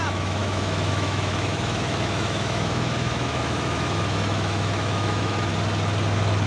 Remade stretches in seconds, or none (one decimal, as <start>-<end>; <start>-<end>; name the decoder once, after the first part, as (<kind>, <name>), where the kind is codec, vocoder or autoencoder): 0.0-5.5 (autoencoder, DAC-VAE)